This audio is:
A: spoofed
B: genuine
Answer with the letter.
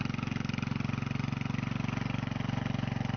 B